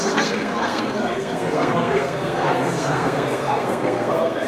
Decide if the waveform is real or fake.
fake